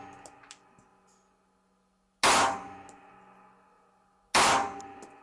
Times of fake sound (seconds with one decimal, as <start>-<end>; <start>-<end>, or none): none